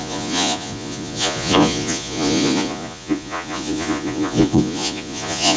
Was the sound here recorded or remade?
remade